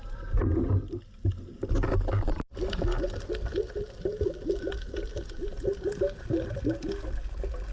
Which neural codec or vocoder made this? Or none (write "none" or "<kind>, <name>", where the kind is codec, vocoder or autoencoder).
none